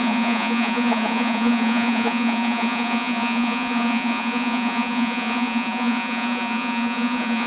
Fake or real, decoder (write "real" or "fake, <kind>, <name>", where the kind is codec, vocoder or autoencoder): fake, vocoder, Vocos